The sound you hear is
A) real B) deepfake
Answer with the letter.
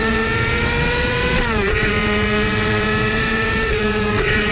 B